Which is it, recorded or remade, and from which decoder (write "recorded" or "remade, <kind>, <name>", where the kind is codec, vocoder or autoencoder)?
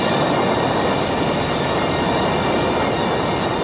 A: recorded